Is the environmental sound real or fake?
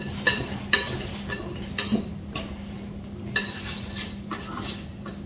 real